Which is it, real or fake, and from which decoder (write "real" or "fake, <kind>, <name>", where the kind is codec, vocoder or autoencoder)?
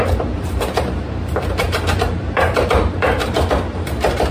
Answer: fake, vocoder, BigVGAN v2